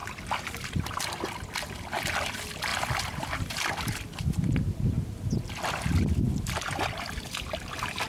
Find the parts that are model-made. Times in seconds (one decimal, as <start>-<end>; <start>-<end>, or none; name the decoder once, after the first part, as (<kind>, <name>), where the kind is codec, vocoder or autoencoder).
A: none